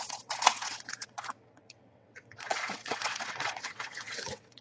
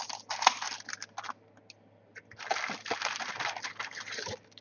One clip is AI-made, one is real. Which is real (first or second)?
second